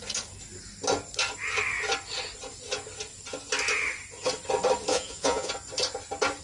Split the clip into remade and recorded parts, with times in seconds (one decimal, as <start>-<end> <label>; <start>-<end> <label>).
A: 0.0-4.9 recorded; 4.9-5.5 remade; 5.5-6.4 recorded

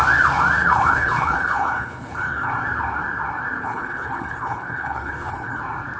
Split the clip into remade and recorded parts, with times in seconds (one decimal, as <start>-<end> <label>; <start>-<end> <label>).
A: 0.0-0.6 recorded; 0.6-2.5 remade; 2.5-3.6 recorded; 3.6-5.6 remade; 5.6-6.0 recorded

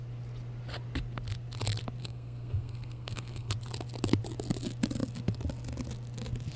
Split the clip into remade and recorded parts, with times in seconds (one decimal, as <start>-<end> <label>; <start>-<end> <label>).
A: 0.0-2.0 recorded; 2.0-3.5 remade; 3.5-6.6 recorded

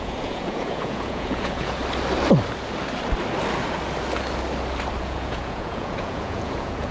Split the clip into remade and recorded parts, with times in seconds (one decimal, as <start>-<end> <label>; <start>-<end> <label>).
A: 0.0-1.8 remade; 1.8-5.0 recorded; 5.0-6.9 remade

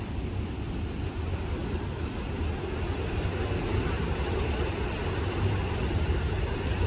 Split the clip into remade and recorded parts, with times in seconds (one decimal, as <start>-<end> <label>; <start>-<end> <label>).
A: 0.0-6.9 recorded

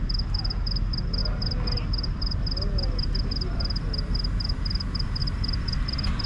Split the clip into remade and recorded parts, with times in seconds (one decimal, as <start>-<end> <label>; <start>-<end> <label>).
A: 0.0-6.3 recorded